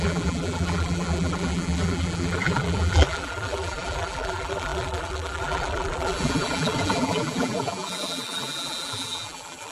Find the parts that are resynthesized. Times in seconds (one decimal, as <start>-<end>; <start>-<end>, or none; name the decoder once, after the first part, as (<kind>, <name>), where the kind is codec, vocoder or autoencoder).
0.0-9.7 (vocoder, BigVGAN v2)